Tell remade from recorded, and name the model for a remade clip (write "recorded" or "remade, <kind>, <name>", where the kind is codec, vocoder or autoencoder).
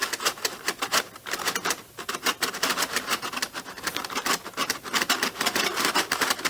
recorded